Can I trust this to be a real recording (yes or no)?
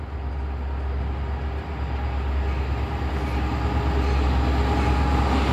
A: yes